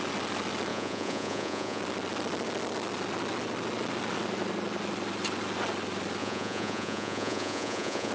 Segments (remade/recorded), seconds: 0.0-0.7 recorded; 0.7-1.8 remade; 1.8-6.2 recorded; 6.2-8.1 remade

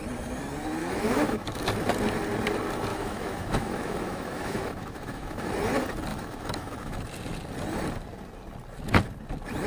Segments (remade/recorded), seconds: 0.0-0.8 recorded; 0.8-1.6 remade; 1.6-2.9 recorded; 2.9-5.5 remade; 5.5-6.1 recorded; 6.1-7.0 remade; 7.0-9.7 recorded

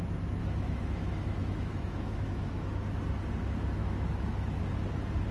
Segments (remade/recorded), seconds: 0.0-0.4 recorded; 0.4-3.0 remade; 3.0-3.8 recorded; 3.8-4.6 remade; 4.6-5.3 recorded

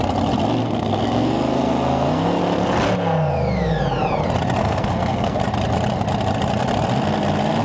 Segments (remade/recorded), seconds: 0.0-0.6 recorded; 0.6-2.4 remade; 2.4-4.6 recorded; 4.6-5.4 remade; 5.4-7.6 recorded

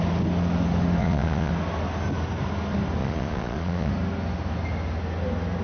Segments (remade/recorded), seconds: 0.0-1.0 recorded; 1.0-1.5 remade; 1.5-3.0 recorded; 3.0-3.9 remade; 3.9-5.6 recorded

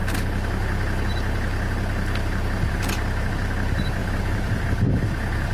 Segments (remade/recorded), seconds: 0.0-4.0 recorded; 4.0-4.6 remade; 4.6-5.5 recorded

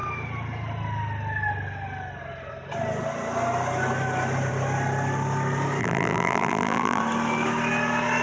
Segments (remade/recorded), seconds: 0.0-5.8 recorded; 5.8-7.0 remade; 7.0-8.2 recorded